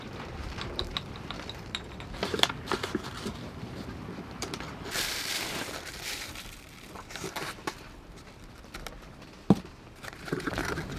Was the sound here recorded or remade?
remade